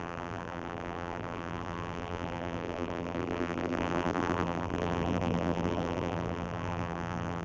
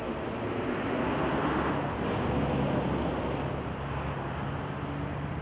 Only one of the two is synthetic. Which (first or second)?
first